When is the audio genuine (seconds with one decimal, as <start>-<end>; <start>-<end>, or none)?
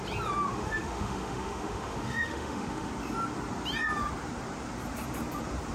0.0-0.5; 2.9-5.7